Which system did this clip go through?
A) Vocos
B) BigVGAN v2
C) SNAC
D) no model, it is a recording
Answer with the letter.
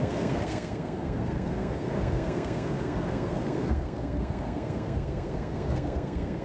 C